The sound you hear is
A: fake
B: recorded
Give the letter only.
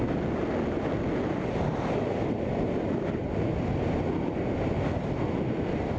B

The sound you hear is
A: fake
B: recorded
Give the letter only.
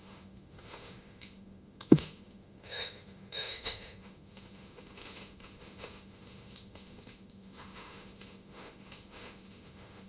A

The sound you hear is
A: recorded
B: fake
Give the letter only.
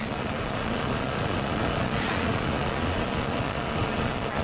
B